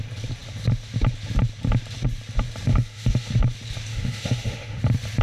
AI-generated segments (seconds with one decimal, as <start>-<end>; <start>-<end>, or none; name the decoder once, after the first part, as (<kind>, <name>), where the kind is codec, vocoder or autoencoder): 2.7-3.3 (autoencoder, DAC-VAE); 3.9-4.8